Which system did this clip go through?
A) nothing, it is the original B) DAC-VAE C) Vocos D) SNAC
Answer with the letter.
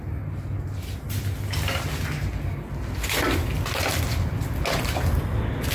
A